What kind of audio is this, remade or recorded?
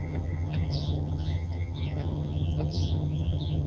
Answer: remade